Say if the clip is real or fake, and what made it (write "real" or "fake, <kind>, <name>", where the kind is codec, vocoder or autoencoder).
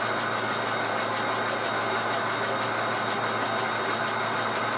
real